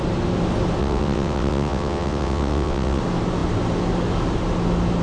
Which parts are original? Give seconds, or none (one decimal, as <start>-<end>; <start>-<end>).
0.0-0.8; 3.0-5.0